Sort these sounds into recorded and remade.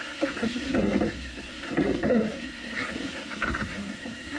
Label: remade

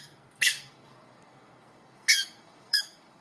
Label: remade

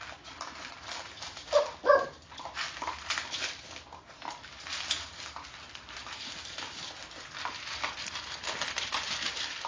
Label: recorded